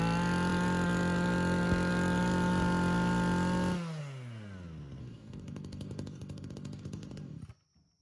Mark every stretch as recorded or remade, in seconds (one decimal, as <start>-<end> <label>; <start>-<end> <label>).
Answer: 0.0-5.0 recorded; 5.0-7.4 remade; 7.4-8.0 recorded